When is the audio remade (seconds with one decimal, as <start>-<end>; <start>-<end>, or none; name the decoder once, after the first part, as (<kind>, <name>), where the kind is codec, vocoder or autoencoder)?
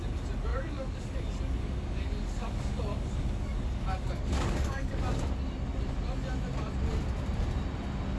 0.5-1.2 (codec, DAC); 1.6-5.0